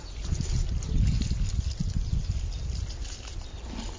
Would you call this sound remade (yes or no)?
no